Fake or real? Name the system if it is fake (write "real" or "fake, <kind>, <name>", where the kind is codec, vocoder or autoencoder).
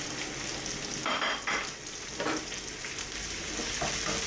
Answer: real